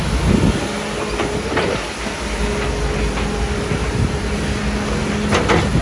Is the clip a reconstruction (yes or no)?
no